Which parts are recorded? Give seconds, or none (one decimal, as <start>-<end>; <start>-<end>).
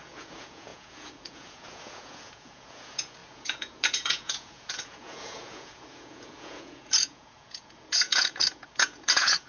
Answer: none